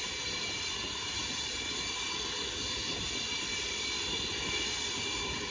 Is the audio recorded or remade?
recorded